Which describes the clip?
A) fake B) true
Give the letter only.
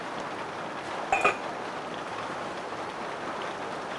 B